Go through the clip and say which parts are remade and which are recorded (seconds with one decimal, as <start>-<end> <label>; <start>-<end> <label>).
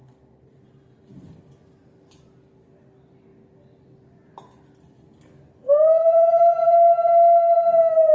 0.0-8.1 recorded